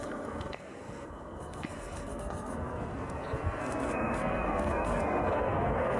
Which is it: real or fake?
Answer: fake